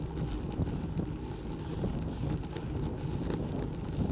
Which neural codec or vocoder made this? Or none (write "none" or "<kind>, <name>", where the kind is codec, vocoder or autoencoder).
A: none